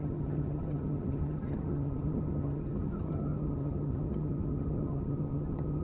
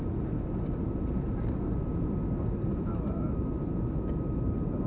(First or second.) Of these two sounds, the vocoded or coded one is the first